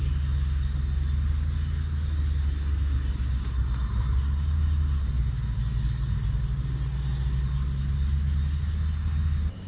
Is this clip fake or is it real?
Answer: real